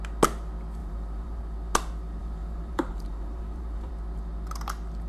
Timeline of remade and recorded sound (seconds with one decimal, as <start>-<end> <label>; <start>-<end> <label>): 0.0-0.8 recorded; 0.8-1.4 remade; 1.4-2.2 recorded; 2.2-3.9 remade; 3.9-5.1 recorded